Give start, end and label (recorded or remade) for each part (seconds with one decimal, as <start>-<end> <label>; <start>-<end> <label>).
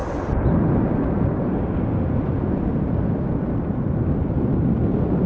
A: 0.0-5.3 recorded